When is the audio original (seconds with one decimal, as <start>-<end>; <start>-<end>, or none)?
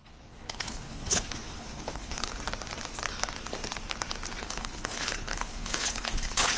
2.3-4.4